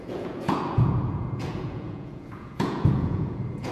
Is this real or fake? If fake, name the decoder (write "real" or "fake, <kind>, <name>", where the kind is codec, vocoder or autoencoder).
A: fake, vocoder, Vocos